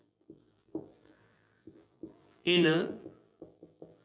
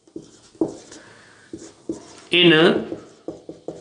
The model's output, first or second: first